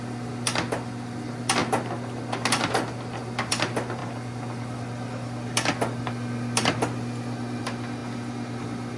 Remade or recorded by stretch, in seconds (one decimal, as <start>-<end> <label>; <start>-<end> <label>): 0.0-9.0 recorded